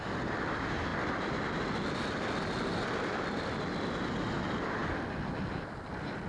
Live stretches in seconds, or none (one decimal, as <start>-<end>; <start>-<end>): 0.0-6.3